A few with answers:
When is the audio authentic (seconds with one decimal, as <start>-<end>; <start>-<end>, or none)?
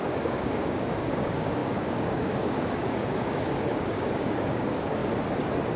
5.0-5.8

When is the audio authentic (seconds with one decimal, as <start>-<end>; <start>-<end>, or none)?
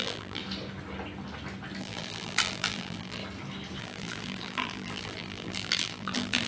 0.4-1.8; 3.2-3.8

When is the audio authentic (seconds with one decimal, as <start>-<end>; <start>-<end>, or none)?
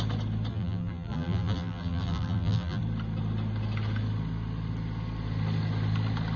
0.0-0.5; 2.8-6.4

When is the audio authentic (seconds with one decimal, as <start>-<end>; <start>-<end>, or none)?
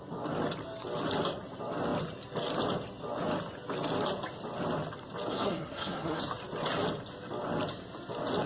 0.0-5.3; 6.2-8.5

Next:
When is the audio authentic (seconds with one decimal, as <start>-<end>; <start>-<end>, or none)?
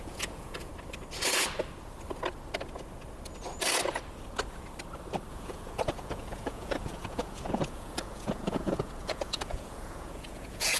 0.7-5.3